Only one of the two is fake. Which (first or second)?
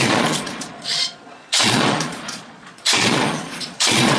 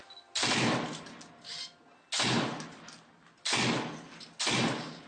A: first